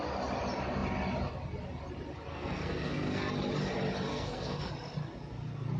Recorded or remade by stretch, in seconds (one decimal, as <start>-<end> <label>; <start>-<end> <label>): 0.0-2.3 recorded; 2.3-3.3 remade; 3.3-4.1 recorded; 4.1-4.7 remade; 4.7-5.8 recorded